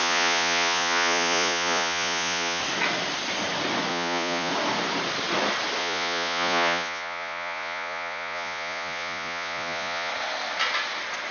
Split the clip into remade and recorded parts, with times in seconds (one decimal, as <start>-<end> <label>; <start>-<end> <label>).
0.0-2.6 remade; 2.6-3.9 recorded; 3.9-4.5 remade; 4.5-5.8 recorded; 5.8-10.1 remade; 10.1-11.3 recorded